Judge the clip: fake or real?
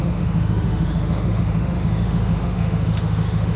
fake